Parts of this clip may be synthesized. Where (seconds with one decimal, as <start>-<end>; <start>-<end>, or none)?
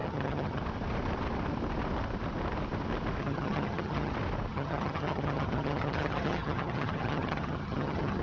0.0-0.6; 3.2-4.1; 4.5-8.2